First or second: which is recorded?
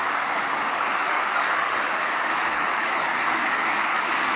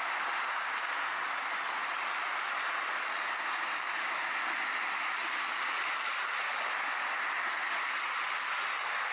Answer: second